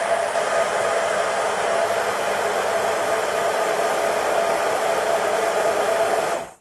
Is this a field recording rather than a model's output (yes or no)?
yes